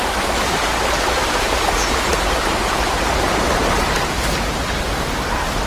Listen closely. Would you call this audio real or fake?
fake